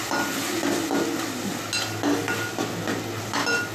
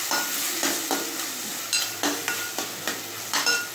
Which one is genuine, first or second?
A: first